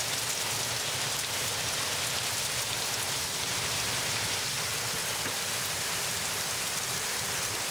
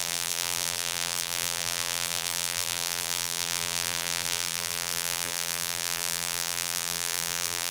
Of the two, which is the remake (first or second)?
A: second